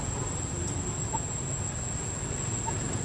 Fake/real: real